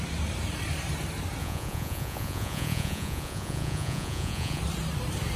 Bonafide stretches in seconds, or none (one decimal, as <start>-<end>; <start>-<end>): 0.0-1.4; 4.6-5.4